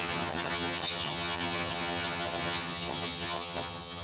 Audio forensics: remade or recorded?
remade